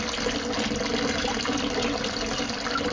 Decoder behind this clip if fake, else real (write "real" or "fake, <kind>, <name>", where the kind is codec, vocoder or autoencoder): real